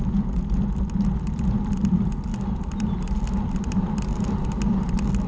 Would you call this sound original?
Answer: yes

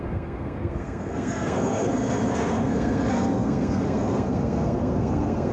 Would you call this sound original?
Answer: no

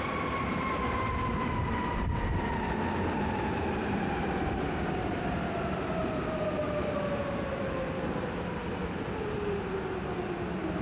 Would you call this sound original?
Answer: yes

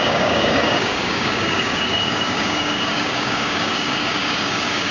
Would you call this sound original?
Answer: no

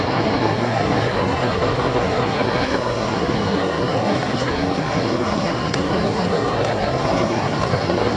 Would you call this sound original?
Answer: no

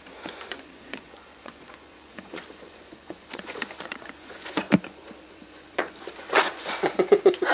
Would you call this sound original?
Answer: no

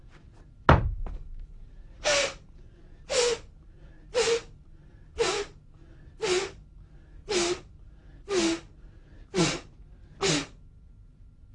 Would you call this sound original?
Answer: yes